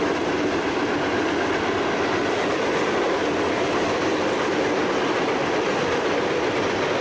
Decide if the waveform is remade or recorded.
recorded